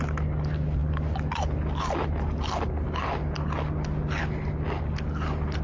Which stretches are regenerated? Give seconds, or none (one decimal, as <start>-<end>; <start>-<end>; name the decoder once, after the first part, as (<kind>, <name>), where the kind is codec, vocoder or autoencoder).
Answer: none